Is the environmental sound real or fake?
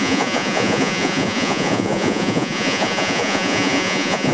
fake